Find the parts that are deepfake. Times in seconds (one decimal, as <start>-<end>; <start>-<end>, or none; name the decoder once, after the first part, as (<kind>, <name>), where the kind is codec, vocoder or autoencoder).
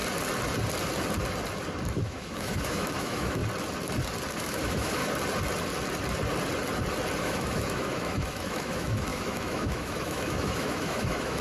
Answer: 2.0-3.4 (autoencoder, DAC-VAE); 4.3-5.0; 7.2-11.4